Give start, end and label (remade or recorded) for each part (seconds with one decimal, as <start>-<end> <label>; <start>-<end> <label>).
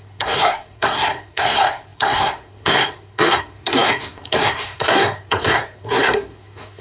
0.0-6.8 remade